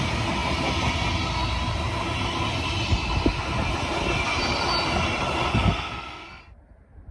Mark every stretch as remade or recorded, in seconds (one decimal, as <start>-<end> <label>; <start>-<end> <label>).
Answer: 0.0-5.5 recorded; 5.5-6.4 remade; 6.4-7.1 recorded